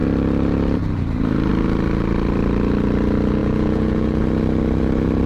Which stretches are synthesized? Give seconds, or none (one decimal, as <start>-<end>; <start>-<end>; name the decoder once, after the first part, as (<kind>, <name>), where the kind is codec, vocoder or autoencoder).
3.4-4.2 (vocoder, Vocos)